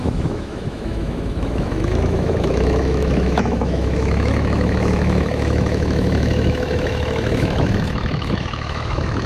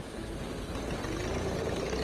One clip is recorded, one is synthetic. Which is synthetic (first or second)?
first